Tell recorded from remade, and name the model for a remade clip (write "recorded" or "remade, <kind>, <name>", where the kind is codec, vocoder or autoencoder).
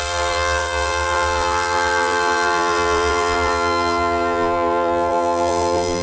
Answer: remade, vocoder, BigVGAN v2